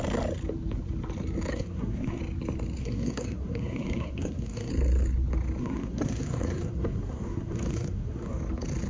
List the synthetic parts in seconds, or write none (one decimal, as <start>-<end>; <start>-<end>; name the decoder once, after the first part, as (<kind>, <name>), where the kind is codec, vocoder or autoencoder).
1.5-2.2 (codec, SNAC); 2.8-4.7; 5.6-8.4